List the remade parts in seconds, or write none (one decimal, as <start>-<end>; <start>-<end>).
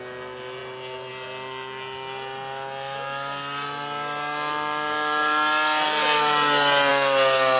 none